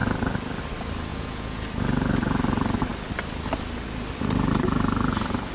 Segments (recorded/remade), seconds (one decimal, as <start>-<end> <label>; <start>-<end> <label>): 0.0-1.1 recorded; 1.1-1.6 remade; 1.6-5.5 recorded